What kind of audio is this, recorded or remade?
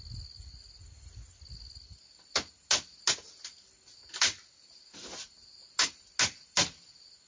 recorded